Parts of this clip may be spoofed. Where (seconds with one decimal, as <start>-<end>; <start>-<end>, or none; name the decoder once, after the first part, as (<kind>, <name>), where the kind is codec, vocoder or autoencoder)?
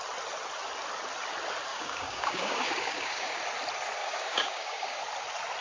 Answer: 1.7-3.4 (codec, DAC); 4.0-5.0